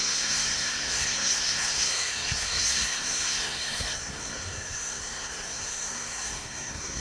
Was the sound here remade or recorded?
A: remade